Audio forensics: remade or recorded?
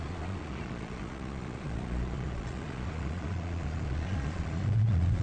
remade